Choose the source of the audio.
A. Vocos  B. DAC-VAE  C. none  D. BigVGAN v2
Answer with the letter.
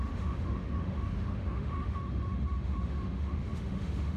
B